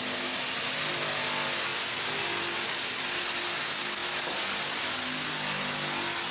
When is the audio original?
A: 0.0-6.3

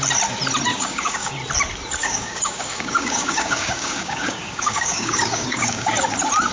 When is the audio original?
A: 0.0-0.7; 1.3-2.0; 5.9-6.5

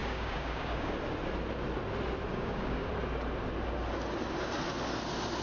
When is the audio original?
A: 0.9-2.3; 2.9-5.4

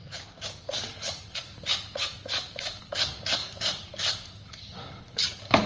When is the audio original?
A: 1.7-2.4

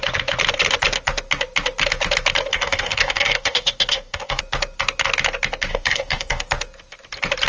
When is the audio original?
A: 0.0-2.5; 4.4-5.7; 6.5-7.5

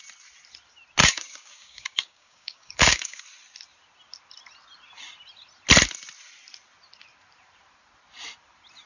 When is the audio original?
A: 0.0-1.0; 3.2-8.9